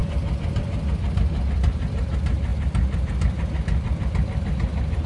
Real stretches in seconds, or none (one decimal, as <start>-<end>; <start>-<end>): 0.0-5.1